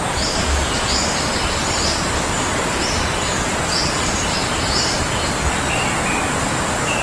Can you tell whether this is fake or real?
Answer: real